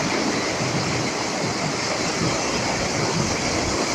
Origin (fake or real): real